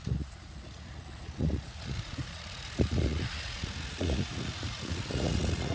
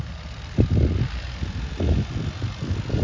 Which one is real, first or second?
second